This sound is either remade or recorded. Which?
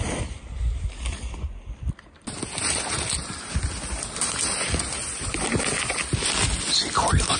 recorded